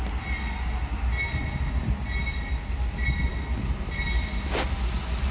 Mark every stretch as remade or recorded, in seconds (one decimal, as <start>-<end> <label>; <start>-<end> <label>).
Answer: 0.0-5.3 recorded